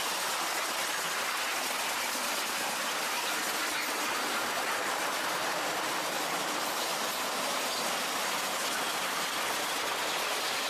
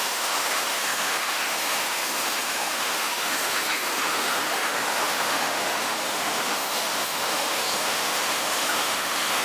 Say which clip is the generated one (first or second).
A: second